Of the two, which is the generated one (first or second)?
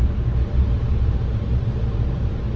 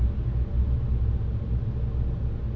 first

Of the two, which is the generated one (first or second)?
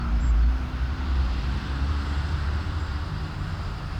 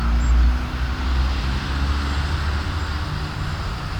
first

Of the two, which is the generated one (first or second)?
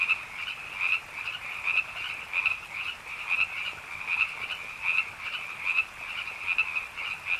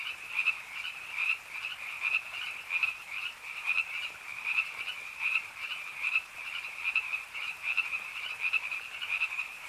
second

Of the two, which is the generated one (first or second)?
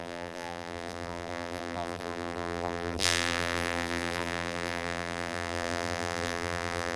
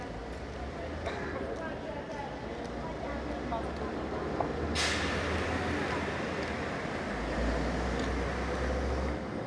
first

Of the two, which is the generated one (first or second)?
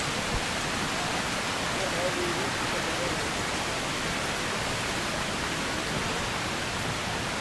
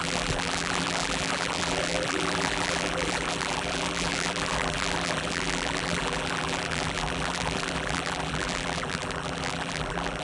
second